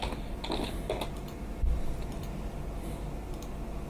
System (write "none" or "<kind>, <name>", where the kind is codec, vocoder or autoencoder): none